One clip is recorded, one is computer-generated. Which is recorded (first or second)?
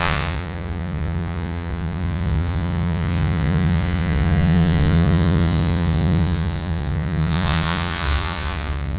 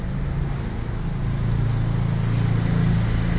second